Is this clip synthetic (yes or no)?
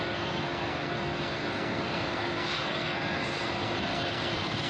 yes